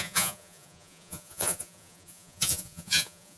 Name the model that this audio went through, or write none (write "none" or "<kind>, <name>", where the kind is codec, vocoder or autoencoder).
vocoder, Vocos